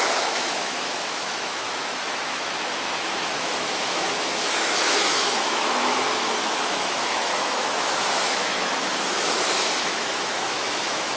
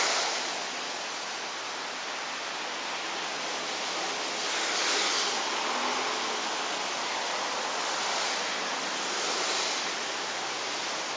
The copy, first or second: first